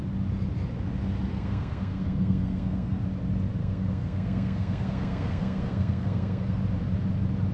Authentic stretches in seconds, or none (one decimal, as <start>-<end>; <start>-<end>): 0.0-1.3; 3.0-3.6; 6.6-7.5